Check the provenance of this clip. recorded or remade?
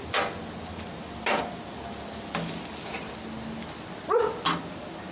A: recorded